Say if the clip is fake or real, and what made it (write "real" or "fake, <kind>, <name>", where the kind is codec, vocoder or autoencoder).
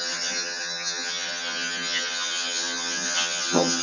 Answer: fake, vocoder, HiFi-GAN